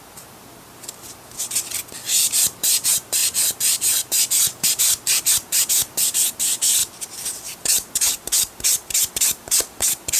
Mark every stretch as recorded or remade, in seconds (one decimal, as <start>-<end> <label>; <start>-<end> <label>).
0.0-10.2 remade